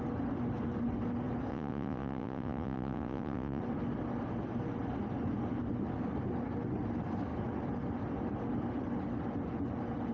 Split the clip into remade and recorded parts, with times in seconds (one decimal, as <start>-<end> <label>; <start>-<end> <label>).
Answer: 0.0-1.5 recorded; 1.5-3.6 remade; 3.6-10.1 recorded